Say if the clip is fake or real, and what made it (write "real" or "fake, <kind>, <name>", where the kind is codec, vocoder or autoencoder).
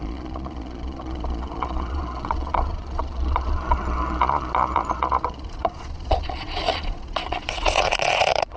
fake, vocoder, Vocos